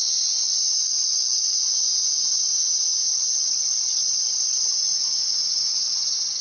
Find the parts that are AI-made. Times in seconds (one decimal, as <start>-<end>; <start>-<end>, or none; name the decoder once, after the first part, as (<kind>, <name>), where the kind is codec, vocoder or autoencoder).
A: 3.0-4.7 (vocoder, WaveNeXt)